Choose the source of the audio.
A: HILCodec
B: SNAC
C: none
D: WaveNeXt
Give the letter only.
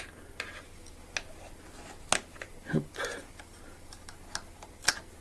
C